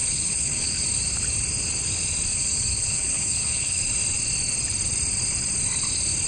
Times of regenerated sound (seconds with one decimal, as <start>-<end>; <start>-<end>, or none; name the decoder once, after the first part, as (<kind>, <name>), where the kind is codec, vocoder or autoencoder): 0.0-0.8 (codec, HILCodec); 2.3-3.8